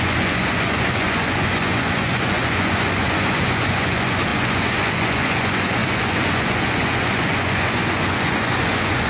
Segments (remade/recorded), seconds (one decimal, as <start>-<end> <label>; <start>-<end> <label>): 0.0-9.1 remade

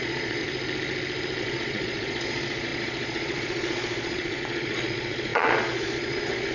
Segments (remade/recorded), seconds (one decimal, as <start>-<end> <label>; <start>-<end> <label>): 0.0-0.4 remade; 0.4-1.4 recorded; 1.4-6.5 remade

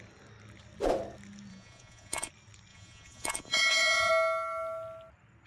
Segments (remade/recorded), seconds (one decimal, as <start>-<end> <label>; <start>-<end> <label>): 0.0-1.5 recorded; 1.5-2.3 remade; 2.3-2.7 recorded; 2.7-4.1 remade; 4.1-5.5 recorded

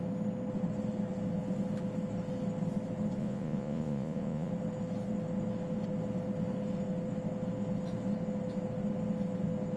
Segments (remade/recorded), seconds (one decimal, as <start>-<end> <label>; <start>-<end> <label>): 0.0-3.2 recorded; 3.2-4.5 remade; 4.5-9.8 recorded

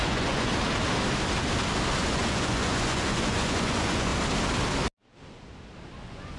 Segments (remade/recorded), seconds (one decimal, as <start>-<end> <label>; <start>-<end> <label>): 0.0-0.5 remade; 0.5-2.0 recorded; 2.0-4.1 remade; 4.1-6.0 recorded; 6.0-6.4 remade

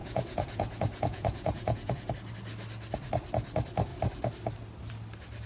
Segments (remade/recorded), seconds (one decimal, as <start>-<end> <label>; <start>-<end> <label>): 0.0-2.1 remade; 2.1-5.5 recorded

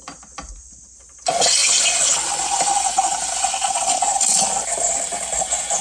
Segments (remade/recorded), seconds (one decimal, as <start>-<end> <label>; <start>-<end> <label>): 0.0-5.8 recorded

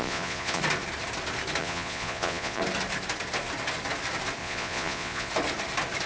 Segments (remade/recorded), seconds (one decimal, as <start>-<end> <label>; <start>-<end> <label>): 0.0-0.6 remade; 0.6-1.6 recorded; 1.6-2.6 remade; 2.6-4.4 recorded; 4.4-5.3 remade; 5.3-6.1 recorded